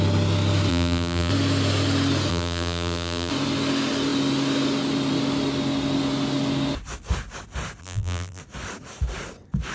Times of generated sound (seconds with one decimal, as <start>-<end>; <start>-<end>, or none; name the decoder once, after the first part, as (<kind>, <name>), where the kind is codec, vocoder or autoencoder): 0.7-1.3 (vocoder, BigVGAN v2); 2.3-3.3; 7.8-8.4